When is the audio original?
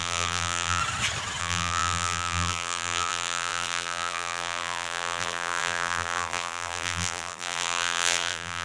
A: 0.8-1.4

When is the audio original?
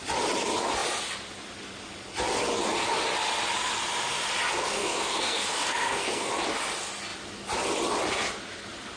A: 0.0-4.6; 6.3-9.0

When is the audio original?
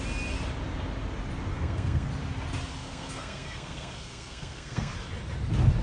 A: 0.0-1.5; 2.1-2.8; 4.9-5.8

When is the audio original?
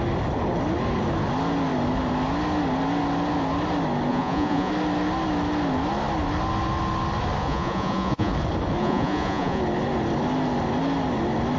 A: 0.0-4.1; 4.7-7.4; 8.3-8.8; 9.6-11.6